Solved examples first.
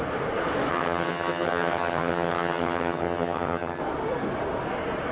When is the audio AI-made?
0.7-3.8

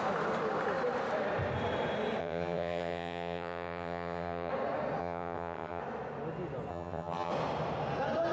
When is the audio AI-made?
2.2-4.5; 5.0-5.8; 6.7-7.3

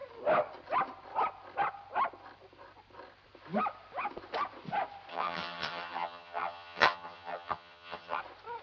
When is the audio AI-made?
5.1-8.2

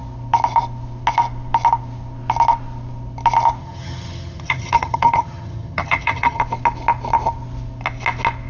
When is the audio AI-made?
3.6-6.4

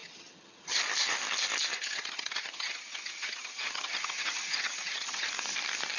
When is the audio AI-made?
0.0-0.8; 1.8-5.3

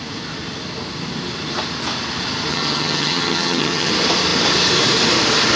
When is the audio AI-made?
2.5-3.9